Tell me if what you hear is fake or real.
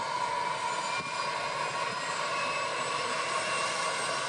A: real